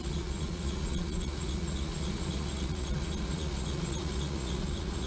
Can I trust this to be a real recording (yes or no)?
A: no